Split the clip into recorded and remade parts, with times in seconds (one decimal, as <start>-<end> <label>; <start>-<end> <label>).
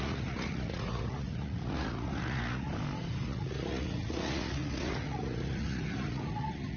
0.0-2.7 remade; 2.7-3.2 recorded; 3.2-6.8 remade